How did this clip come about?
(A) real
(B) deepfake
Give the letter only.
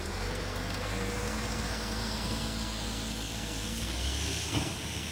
B